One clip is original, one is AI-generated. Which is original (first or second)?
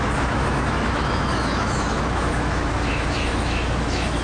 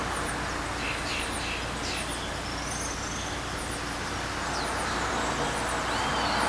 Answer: second